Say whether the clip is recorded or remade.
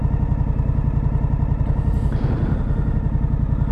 recorded